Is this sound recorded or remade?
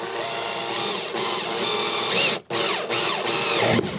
recorded